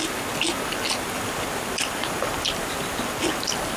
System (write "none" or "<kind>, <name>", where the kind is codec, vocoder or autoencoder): none